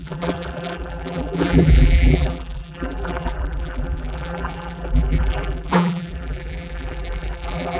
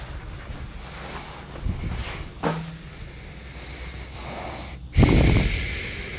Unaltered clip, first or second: second